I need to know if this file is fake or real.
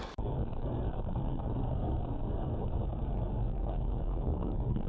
fake